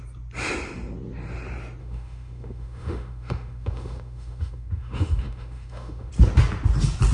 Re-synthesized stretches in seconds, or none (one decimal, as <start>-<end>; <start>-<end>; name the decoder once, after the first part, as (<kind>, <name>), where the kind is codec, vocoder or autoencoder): 1.8-6.1 (autoencoder, DAC-VAE)